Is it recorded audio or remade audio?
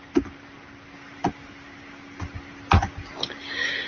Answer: recorded